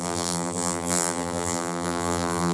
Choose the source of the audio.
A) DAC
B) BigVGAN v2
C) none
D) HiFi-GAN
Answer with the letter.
B